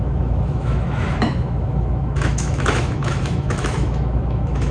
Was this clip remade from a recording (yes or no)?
yes